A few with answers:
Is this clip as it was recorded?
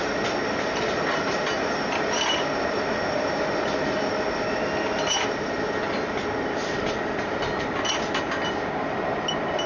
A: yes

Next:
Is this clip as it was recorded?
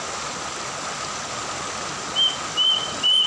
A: yes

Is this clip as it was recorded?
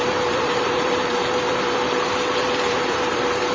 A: no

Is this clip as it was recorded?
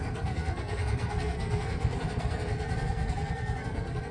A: no